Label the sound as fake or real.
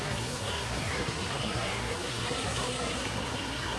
fake